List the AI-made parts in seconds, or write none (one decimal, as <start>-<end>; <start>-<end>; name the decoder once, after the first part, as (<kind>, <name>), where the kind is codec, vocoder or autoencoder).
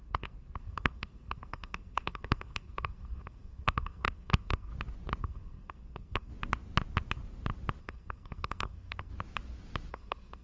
0.0-4.7 (codec, SNAC); 5.2-6.3; 7.8-9.1; 9.9-10.4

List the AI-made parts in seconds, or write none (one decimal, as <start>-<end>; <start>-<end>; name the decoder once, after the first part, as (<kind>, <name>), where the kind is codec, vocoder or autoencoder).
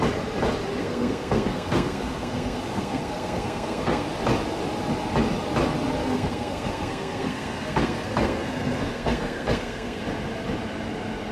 0.8-4.1 (codec, SNAC); 6.0-10.0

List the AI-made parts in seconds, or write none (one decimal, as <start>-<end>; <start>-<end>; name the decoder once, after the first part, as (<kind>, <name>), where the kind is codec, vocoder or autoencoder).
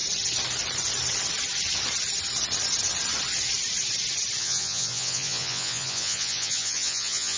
4.4-7.4 (vocoder, Vocos)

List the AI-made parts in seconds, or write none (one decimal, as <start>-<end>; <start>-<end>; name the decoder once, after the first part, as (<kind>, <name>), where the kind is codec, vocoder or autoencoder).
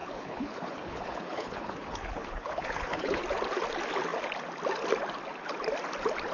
0.0-3.2 (codec, HILCodec)